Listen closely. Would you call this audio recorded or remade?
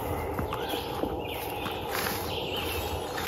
recorded